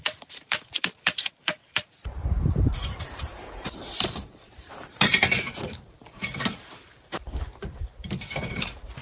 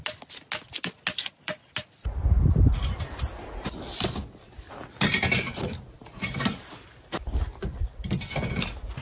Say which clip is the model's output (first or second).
first